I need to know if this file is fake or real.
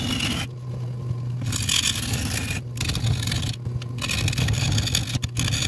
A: real